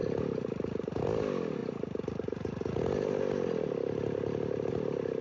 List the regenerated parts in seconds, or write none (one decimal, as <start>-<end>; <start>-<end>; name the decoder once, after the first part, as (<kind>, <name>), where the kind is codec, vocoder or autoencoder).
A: none